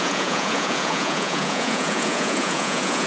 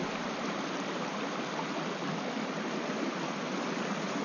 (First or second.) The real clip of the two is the second